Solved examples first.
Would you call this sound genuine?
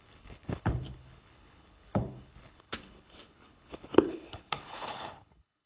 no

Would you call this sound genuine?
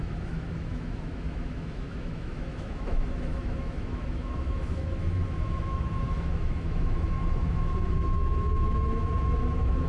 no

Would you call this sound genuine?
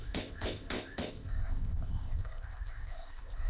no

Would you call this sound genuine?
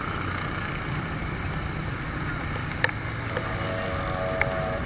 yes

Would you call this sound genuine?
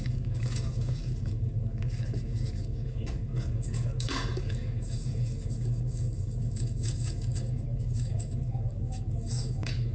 no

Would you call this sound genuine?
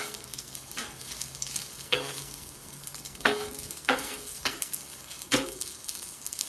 no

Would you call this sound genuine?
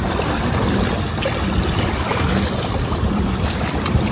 yes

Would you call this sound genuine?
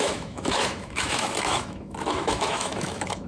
no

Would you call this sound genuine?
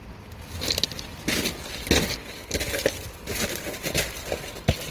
yes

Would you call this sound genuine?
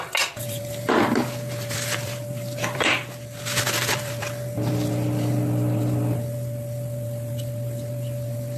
no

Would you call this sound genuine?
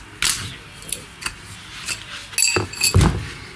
yes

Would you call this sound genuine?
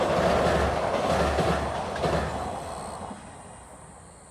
yes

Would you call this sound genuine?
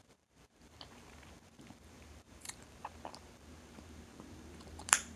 no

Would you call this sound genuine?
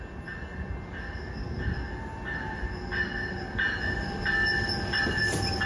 yes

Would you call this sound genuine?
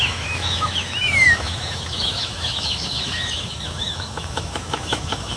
no